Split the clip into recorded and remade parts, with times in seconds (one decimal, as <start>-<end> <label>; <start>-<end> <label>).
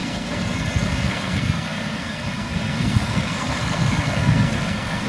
0.0-5.1 remade